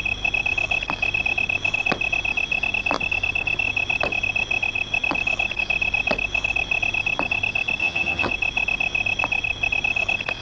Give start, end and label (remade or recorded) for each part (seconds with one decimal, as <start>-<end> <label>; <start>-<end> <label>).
0.0-7.8 recorded; 7.8-8.3 remade; 8.3-10.4 recorded